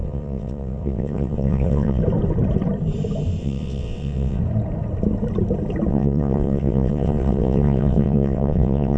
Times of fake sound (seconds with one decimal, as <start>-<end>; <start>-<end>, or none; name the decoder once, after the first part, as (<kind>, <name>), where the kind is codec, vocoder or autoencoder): 0.0-2.0 (vocoder, WaveNeXt); 3.4-4.4; 5.9-9.0